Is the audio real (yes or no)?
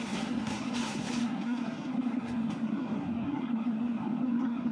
no